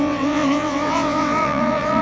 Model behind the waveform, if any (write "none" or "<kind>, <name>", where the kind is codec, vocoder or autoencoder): vocoder, WaveNeXt